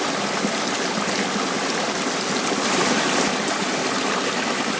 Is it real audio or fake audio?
real